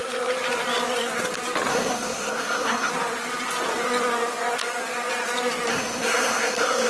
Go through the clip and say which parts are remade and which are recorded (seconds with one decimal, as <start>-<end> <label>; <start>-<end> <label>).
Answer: 0.0-1.7 recorded; 1.7-2.9 remade; 2.9-5.7 recorded; 5.7-6.9 remade